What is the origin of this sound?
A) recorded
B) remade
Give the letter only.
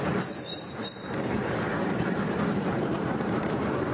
B